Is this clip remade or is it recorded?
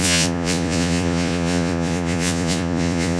remade